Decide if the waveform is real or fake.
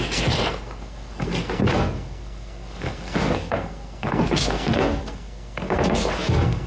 fake